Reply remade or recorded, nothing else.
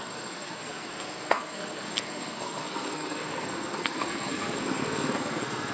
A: remade